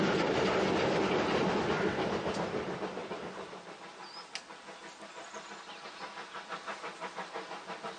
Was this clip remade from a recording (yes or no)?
no